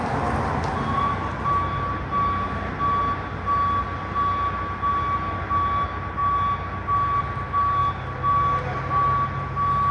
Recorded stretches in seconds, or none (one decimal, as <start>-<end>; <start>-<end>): 0.0-9.9